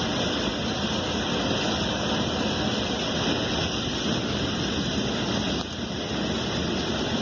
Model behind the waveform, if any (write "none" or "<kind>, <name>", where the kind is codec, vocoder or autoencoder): none